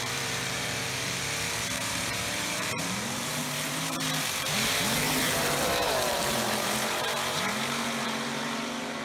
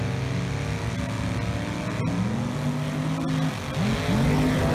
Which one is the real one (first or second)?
second